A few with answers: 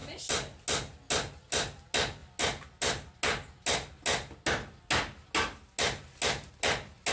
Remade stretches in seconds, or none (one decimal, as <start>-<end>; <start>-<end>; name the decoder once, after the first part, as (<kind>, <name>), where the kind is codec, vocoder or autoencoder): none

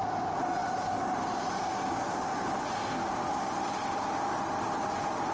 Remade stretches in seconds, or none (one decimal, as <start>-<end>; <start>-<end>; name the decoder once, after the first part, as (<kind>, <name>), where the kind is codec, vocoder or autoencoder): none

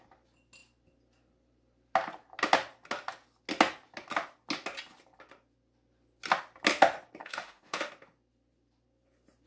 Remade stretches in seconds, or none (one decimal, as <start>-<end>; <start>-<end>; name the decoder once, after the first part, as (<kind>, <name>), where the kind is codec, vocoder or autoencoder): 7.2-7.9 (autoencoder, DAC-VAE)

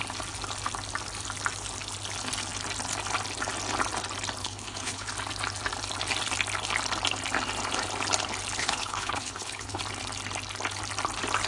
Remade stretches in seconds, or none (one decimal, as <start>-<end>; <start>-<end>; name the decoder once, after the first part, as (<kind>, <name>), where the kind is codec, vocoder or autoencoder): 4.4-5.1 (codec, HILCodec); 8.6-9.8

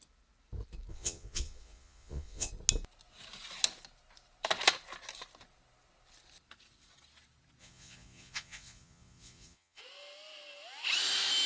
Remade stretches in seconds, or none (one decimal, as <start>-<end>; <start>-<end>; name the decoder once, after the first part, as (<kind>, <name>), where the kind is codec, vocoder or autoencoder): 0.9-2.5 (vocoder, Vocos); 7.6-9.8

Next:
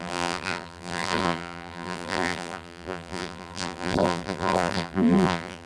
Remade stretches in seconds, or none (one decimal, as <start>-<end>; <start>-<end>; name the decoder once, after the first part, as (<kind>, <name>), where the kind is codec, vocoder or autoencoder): 0.0-5.7 (vocoder, BigVGAN v2)